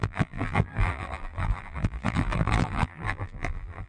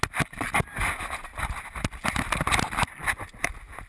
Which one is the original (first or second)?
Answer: second